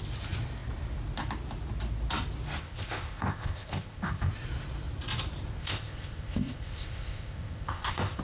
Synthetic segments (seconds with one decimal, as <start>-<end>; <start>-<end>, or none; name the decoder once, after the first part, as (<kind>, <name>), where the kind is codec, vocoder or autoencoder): 2.6-4.3 (codec, ZipCodec); 5.6-8.2